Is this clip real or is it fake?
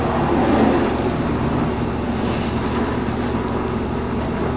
real